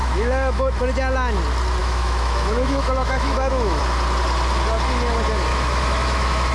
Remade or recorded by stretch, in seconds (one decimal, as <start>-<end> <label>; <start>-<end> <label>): 0.0-0.8 remade; 0.8-1.8 recorded; 1.8-3.8 remade; 3.8-5.5 recorded; 5.5-6.5 remade